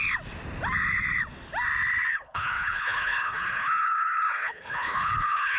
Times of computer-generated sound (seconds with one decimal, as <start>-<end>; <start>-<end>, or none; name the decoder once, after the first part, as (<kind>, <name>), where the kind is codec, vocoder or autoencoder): 2.1-5.6 (codec, HILCodec)